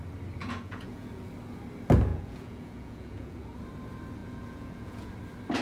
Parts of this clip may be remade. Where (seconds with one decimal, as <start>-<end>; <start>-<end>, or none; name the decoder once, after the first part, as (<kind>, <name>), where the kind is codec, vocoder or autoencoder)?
0.4-1.3 (vocoder, Vocos); 2.1-3.6; 4.2-5.1